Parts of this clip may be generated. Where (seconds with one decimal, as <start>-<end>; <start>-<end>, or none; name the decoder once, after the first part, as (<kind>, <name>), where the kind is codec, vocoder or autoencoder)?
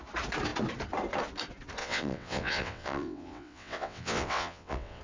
1.8-5.0 (vocoder, WaveNeXt)